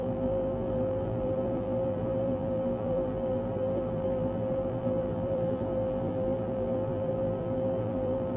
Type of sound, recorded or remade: remade